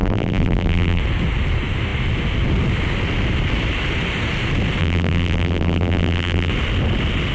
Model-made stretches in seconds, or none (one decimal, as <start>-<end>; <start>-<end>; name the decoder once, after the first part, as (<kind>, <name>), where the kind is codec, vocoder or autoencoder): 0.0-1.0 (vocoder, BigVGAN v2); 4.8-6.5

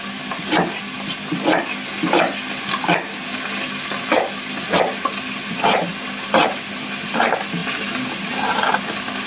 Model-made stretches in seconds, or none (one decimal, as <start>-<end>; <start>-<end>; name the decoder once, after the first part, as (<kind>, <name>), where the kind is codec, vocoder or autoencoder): none

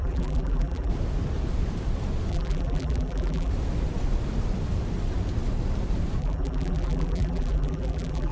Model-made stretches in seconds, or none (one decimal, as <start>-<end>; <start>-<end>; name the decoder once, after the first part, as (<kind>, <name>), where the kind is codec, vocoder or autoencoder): 0.0-0.9 (vocoder, BigVGAN v2); 2.3-3.5; 6.2-8.3

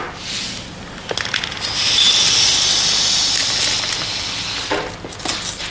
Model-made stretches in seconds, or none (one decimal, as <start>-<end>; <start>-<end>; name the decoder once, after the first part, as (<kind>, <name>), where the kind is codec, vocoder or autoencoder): none

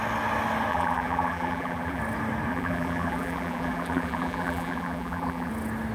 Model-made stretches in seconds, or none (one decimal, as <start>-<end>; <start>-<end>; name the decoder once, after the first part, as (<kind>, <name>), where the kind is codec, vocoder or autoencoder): 0.7-2.0 (vocoder, BigVGAN v2); 2.5-5.5

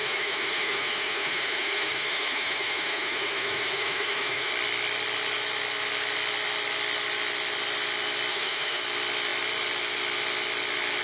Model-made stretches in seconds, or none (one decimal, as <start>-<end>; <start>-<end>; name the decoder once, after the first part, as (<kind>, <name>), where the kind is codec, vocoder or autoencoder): 0.0-4.5 (autoencoder, DAC-VAE); 8.3-8.8

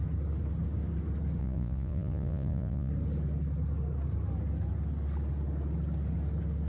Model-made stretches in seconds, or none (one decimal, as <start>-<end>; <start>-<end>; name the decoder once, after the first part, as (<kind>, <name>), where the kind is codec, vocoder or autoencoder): 1.4-2.9 (vocoder, Vocos)

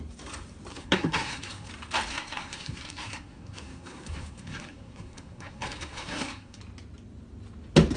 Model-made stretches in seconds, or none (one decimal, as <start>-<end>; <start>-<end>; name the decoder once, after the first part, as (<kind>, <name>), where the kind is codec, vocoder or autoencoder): 0.7-1.7 (codec, SNAC); 2.1-6.6